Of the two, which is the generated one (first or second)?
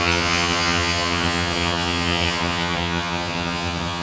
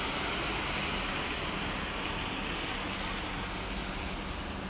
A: first